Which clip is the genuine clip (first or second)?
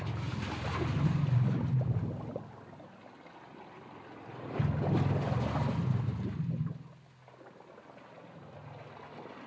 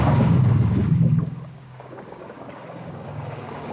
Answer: first